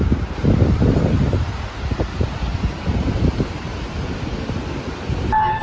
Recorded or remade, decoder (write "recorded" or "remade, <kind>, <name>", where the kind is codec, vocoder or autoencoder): recorded